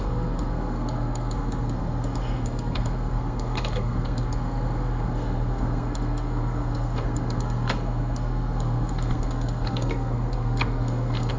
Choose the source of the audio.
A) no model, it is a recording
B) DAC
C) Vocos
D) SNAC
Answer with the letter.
D